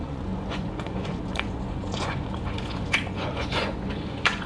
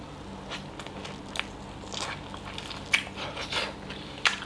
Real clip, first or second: second